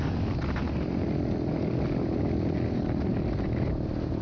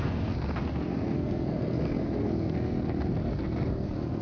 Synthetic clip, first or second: second